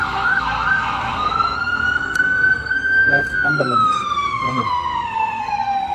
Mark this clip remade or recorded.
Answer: remade